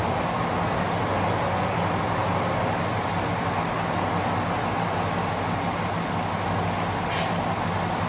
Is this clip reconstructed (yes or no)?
no